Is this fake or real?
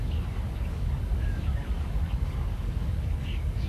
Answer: fake